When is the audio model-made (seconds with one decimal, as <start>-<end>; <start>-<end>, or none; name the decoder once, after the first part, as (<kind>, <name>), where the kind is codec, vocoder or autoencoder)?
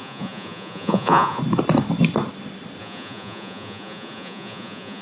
0.0-1.4 (vocoder, Vocos); 2.8-5.0